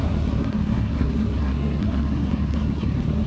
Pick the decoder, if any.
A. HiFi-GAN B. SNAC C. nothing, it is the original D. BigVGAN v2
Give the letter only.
B